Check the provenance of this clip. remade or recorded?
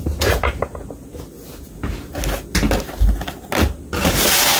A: recorded